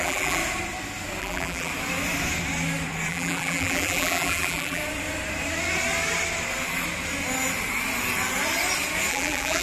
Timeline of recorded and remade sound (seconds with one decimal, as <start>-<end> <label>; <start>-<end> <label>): 0.0-0.4 remade; 0.4-1.2 recorded; 1.2-1.7 remade; 1.7-3.1 recorded; 3.1-4.8 remade; 4.8-9.1 recorded; 9.1-9.6 remade